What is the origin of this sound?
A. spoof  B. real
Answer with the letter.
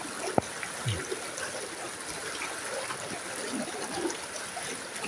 B